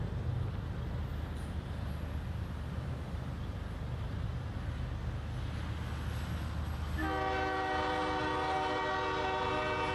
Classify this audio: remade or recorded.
recorded